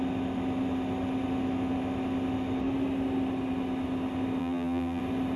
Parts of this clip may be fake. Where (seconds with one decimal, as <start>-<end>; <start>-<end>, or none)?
4.4-5.0